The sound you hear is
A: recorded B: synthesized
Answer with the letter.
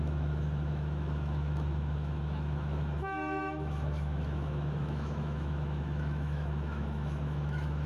B